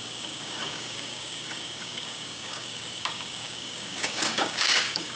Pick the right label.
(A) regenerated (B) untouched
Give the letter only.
A